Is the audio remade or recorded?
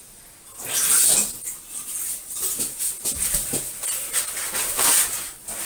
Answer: recorded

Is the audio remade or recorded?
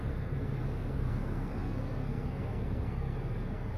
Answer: remade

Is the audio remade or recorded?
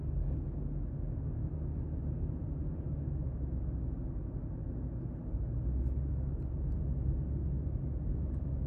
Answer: recorded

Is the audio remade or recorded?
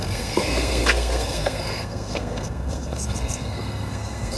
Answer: remade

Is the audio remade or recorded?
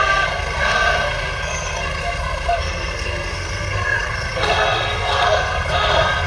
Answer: remade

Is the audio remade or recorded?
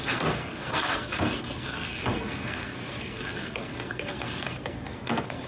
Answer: remade